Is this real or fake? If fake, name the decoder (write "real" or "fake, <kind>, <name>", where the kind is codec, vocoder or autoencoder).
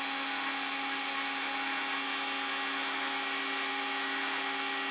real